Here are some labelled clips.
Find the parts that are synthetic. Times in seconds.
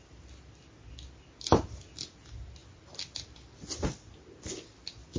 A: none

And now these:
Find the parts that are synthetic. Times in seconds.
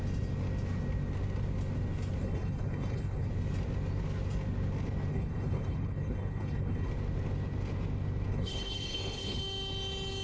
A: 2.2-3.3 (codec, HILCodec); 5.1-6.9; 8.3-9.4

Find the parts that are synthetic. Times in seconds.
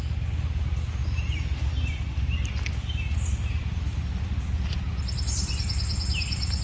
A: none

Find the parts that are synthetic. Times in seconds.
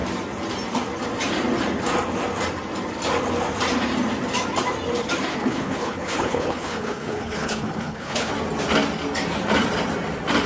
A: 5.3-8.3 (codec, HILCodec)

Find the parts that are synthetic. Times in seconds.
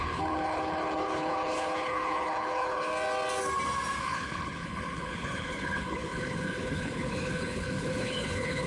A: 0.0-2.9 (codec, HILCodec); 4.0-8.7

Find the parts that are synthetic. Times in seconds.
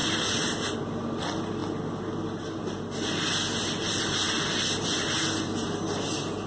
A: none